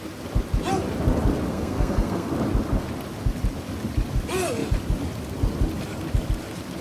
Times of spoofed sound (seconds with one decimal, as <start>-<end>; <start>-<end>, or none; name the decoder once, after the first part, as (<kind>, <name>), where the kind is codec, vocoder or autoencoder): 1.5-2.3 (codec, SNAC)